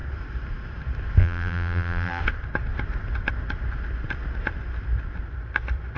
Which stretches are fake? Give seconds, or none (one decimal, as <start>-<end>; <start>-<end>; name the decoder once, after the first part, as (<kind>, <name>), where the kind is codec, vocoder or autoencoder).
1.2-2.2 (vocoder, BigVGAN v2)